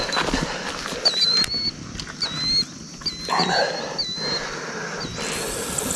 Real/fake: real